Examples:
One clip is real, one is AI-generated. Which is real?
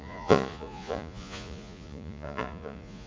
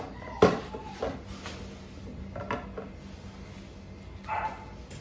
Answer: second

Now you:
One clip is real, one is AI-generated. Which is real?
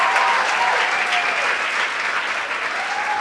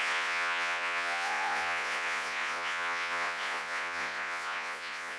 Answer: first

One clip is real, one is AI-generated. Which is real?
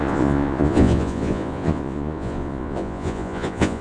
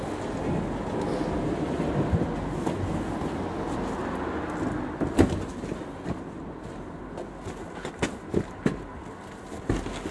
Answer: second